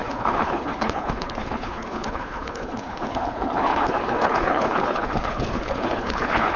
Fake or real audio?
fake